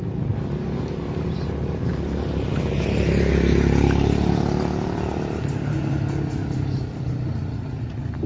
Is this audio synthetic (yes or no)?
no